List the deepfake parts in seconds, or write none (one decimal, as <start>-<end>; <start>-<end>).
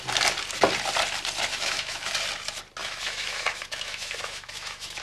1.5-2.1; 2.8-5.0